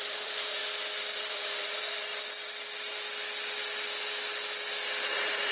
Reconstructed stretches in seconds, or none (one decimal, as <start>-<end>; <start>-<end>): 0.0-0.6; 1.3-2.1; 5.1-5.5